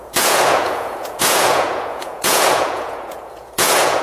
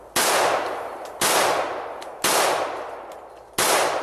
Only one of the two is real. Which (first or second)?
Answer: second